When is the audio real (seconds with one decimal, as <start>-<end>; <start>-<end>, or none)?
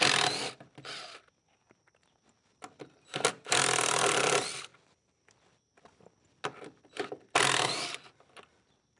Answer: 0.0-9.0